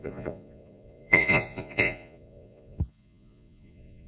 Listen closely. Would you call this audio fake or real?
fake